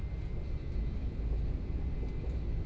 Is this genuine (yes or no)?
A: yes